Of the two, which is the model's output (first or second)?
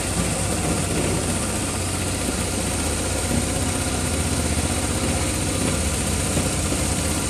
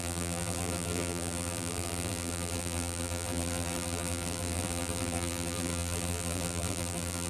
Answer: second